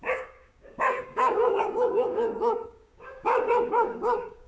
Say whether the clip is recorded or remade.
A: remade